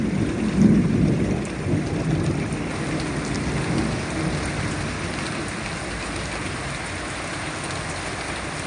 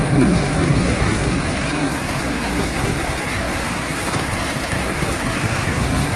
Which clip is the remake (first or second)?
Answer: second